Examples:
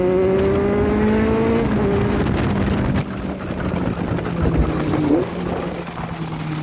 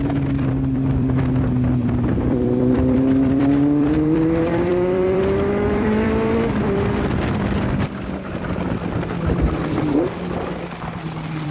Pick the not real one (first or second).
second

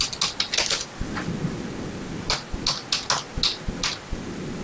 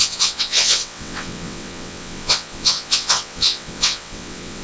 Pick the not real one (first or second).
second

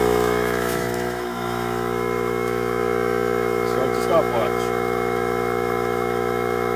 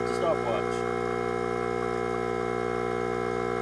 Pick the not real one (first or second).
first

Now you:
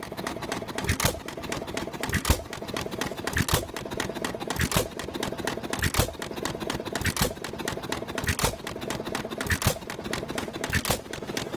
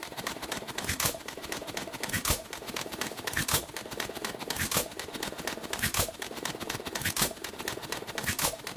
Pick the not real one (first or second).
second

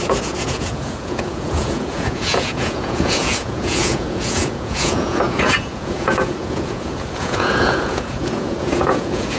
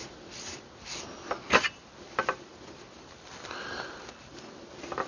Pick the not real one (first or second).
first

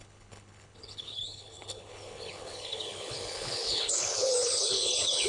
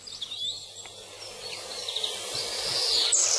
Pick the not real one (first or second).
first